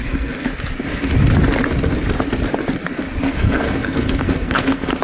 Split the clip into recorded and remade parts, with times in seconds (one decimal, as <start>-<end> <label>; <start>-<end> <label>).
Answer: 0.0-0.5 remade; 0.5-3.2 recorded; 3.2-5.0 remade